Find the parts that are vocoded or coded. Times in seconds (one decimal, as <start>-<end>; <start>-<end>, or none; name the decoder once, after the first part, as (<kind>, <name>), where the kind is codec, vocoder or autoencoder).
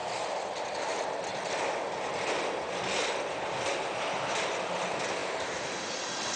0.0-0.5 (vocoder, BigVGAN v2); 1.3-2.1; 5.2-6.4